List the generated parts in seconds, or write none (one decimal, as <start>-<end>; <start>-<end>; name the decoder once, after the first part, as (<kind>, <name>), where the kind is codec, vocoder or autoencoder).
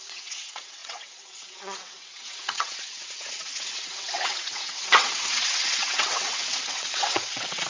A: 0.0-7.7 (vocoder, WaveNeXt)